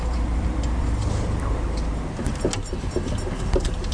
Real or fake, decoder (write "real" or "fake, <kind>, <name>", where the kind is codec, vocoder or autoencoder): real